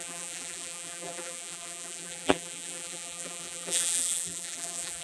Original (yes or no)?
no